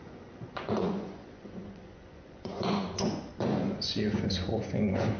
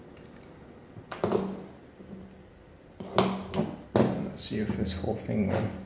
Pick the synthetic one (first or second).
first